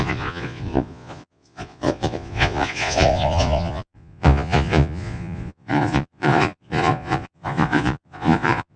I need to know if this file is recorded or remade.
remade